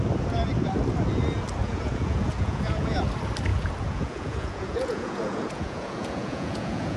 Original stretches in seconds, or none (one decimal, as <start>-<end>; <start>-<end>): 0.0-1.6; 3.0-3.5